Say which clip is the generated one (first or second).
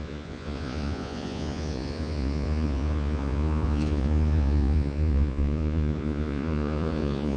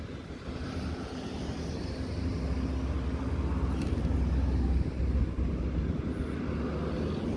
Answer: first